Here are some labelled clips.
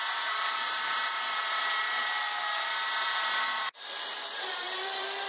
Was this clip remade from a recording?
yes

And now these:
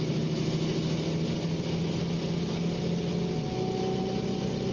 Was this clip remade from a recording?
no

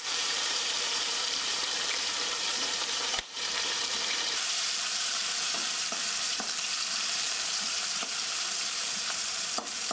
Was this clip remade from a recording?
yes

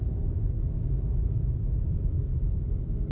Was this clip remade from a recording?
yes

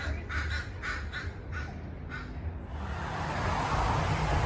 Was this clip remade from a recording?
no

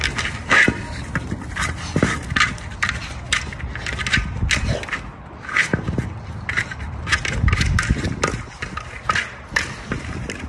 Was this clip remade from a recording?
no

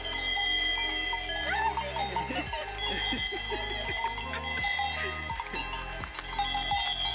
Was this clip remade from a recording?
no